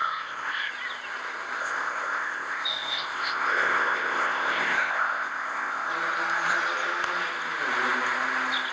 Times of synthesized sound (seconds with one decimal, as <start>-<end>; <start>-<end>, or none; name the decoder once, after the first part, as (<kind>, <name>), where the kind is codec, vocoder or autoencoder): 0.0-0.7 (codec, ZipCodec); 1.6-5.9